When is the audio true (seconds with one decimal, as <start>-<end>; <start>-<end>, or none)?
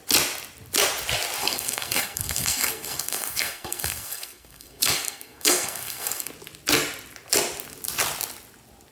0.0-1.4; 6.3-8.9